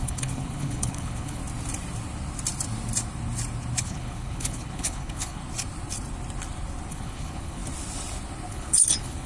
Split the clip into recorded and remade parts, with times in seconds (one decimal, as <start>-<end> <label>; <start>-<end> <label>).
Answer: 0.0-1.4 remade; 1.4-3.8 recorded; 3.8-5.4 remade; 5.4-6.9 recorded; 6.9-7.6 remade; 7.6-8.5 recorded; 8.5-9.3 remade